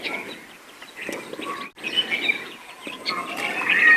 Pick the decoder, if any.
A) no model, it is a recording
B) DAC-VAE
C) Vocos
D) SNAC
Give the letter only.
A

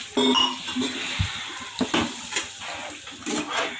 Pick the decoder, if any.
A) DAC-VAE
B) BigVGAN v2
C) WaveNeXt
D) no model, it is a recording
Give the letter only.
D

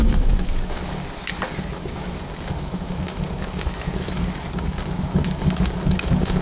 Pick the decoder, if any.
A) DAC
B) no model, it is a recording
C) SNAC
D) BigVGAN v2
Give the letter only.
A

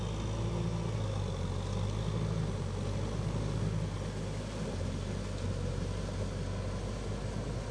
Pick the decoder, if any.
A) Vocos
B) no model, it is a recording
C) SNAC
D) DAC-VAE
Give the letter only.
B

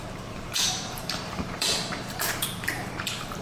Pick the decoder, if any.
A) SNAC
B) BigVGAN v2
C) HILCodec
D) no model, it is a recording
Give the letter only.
B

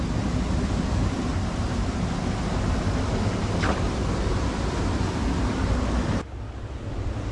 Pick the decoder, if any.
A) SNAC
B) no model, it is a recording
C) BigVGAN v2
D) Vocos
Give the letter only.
B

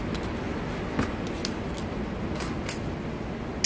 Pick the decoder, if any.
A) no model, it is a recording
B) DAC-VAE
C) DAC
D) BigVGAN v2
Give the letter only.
A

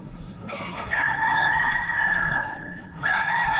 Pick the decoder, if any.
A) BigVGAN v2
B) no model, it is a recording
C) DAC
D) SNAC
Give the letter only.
D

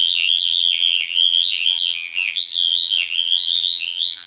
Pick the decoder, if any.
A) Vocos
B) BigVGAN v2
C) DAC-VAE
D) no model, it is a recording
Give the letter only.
B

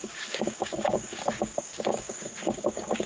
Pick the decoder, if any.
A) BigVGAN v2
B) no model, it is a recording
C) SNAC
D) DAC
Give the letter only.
D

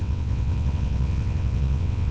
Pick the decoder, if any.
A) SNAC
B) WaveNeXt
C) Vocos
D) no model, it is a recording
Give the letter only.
B